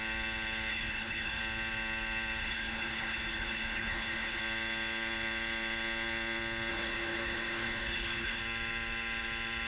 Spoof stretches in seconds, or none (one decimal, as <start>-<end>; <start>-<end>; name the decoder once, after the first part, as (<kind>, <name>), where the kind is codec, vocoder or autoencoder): 0.7-1.4 (codec, HILCodec); 2.4-4.4; 6.7-8.4